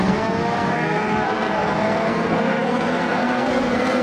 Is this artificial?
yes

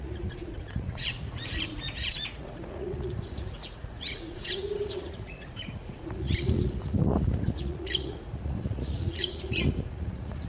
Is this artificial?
yes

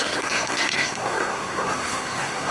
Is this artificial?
yes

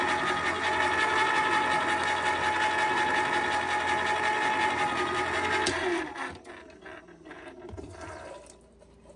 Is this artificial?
no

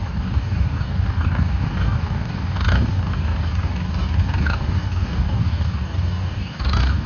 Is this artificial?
yes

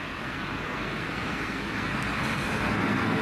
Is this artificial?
yes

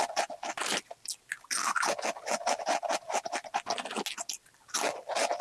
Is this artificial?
no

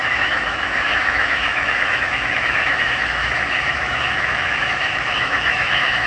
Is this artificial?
yes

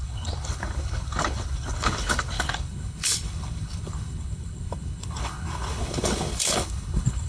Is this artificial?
yes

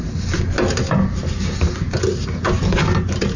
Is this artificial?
no